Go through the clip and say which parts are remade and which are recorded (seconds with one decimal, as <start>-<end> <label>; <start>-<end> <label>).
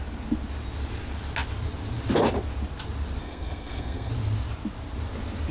0.0-3.2 recorded; 3.2-4.1 remade; 4.1-5.5 recorded